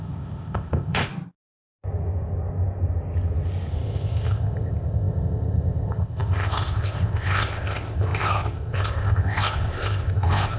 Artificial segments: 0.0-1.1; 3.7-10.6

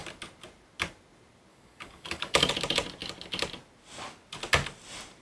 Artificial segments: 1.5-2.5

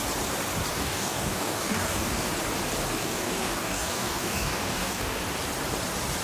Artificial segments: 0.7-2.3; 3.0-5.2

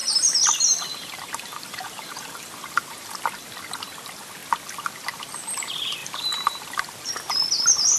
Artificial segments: 0.0-3.3; 6.0-7.1

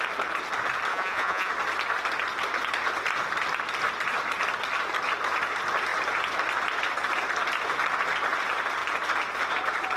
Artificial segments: 0.9-1.5